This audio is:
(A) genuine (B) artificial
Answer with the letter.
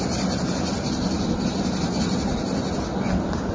A